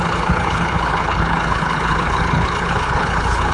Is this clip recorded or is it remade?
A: remade